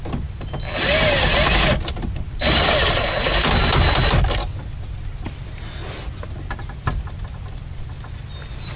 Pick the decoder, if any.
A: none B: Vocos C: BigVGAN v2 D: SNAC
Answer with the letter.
A